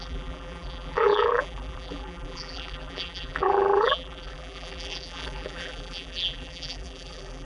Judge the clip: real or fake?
fake